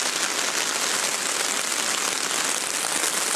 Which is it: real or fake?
real